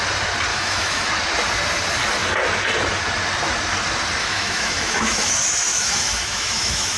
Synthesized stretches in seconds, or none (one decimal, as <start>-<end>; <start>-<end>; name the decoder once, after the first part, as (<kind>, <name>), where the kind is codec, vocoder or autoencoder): 0.5-1.1 (autoencoder, DAC-VAE); 4.2-5.3; 5.7-7.0